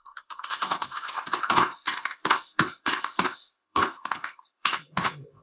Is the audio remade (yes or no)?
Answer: yes